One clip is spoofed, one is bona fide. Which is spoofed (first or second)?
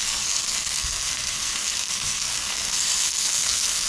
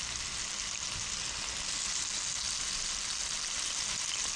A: first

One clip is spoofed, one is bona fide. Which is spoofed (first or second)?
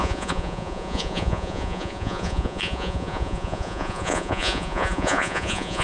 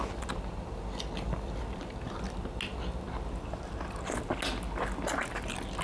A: first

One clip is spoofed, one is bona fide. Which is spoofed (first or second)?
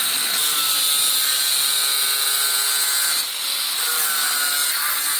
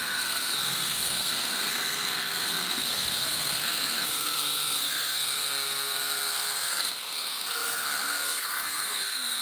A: second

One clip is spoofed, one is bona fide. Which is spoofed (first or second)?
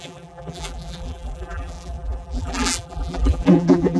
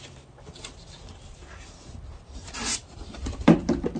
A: first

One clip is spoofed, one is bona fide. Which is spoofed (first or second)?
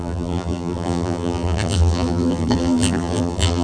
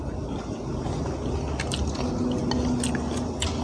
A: first